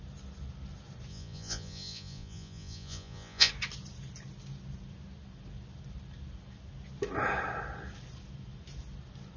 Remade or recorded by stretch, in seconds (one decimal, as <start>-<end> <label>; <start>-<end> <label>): 0.0-1.1 recorded; 1.1-3.5 remade; 3.5-9.4 recorded